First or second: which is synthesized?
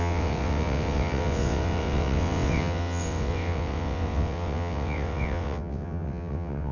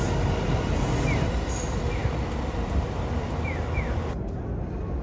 first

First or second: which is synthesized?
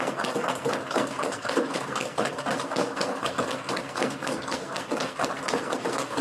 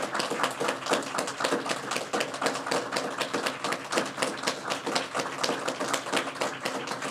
first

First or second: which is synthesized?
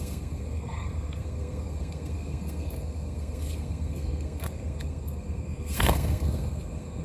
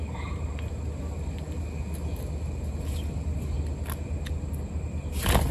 first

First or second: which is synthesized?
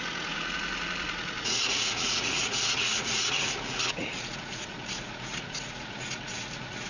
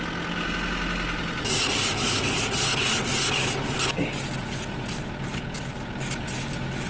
first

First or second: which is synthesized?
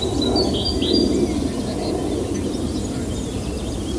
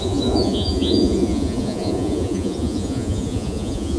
second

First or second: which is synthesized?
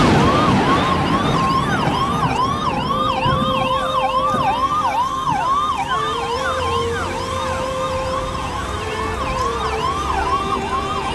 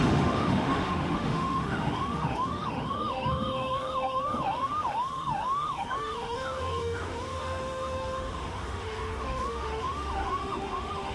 second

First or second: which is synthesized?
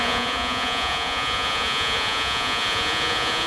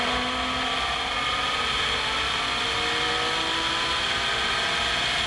first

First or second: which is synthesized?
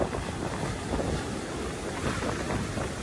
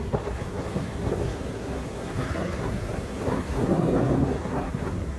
second